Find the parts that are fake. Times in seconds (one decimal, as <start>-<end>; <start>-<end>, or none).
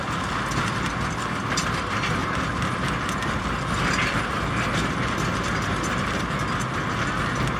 none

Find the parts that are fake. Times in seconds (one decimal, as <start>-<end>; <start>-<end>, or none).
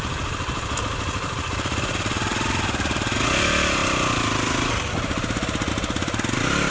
none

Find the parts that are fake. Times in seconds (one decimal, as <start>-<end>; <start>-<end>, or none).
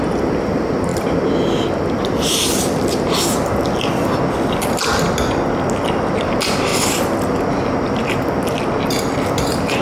none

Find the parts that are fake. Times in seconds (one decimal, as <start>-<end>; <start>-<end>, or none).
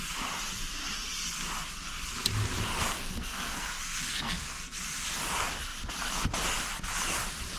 2.8-4.8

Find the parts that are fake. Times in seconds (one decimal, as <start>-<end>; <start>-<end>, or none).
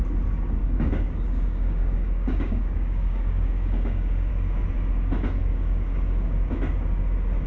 0.6-4.3; 5.4-6.5